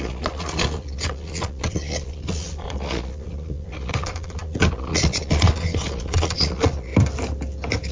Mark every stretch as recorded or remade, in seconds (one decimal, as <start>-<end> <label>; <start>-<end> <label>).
0.0-6.9 remade; 6.9-7.9 recorded

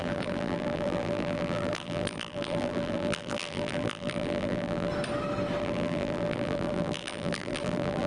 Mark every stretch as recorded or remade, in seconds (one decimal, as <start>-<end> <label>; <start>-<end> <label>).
0.0-4.9 remade; 4.9-5.6 recorded; 5.6-8.1 remade

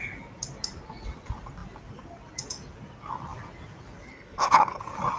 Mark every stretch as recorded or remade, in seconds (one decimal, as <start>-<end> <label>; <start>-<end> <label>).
0.0-4.1 recorded; 4.1-4.8 remade; 4.8-5.2 recorded

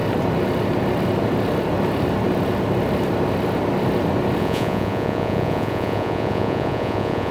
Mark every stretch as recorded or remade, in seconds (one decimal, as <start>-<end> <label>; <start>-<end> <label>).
0.0-4.4 recorded; 4.4-7.3 remade

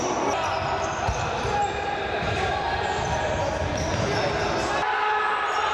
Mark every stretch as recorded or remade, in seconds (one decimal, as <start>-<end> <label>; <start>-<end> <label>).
0.0-5.7 recorded

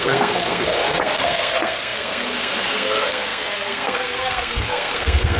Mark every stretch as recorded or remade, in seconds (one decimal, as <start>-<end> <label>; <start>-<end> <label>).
0.0-5.4 remade